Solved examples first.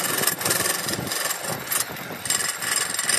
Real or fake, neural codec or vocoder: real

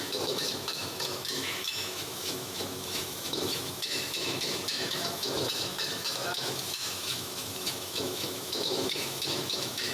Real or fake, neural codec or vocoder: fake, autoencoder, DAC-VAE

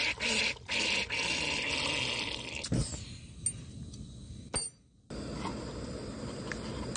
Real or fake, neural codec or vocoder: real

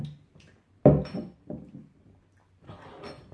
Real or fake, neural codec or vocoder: fake, vocoder, BigVGAN v2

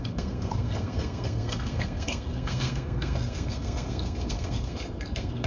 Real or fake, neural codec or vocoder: fake, codec, SNAC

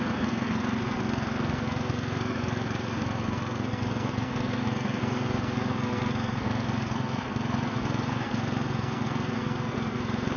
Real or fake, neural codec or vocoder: fake, codec, SNAC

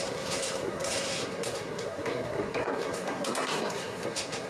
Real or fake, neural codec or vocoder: fake, codec, SNAC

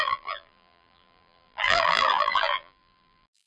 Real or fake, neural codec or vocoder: fake, vocoder, BigVGAN v2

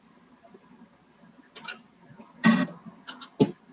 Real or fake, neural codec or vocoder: real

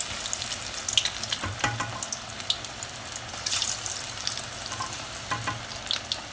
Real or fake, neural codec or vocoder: real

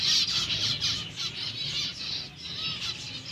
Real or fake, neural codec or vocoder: real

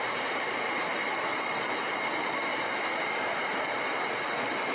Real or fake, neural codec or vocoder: real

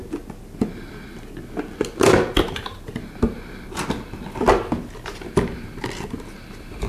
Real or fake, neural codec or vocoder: real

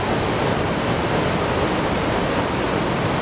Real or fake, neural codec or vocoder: real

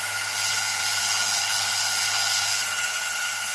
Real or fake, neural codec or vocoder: fake, codec, HILCodec